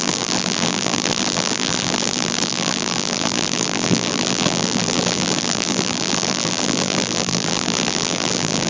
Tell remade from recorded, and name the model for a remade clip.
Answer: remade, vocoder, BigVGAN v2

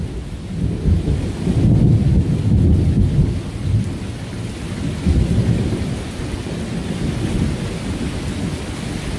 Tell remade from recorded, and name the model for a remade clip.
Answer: recorded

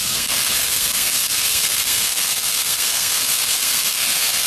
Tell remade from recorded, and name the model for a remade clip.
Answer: remade, codec, SNAC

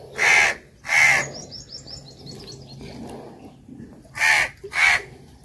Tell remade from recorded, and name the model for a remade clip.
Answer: recorded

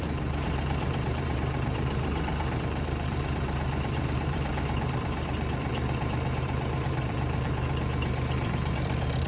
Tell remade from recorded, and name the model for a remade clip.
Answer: remade, vocoder, BigVGAN v2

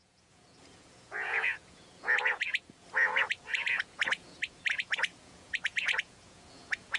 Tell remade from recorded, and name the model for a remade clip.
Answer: remade, vocoder, Vocos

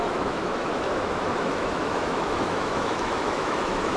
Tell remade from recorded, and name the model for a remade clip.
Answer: remade, autoencoder, DAC-VAE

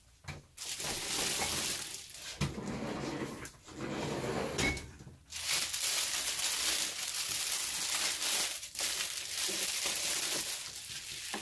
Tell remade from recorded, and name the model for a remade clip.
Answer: recorded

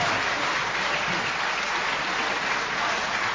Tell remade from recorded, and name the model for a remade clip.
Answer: recorded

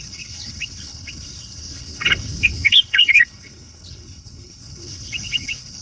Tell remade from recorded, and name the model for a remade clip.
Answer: remade, codec, HILCodec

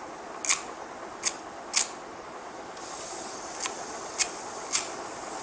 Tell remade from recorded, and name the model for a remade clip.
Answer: recorded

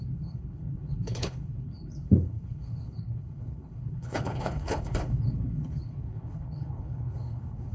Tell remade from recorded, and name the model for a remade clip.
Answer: remade, codec, HILCodec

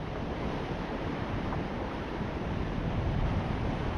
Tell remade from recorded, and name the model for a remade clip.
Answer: remade, vocoder, BigVGAN v2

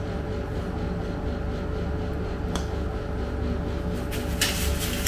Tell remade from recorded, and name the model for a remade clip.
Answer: recorded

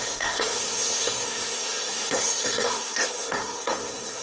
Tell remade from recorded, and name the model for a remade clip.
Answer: remade, codec, SNAC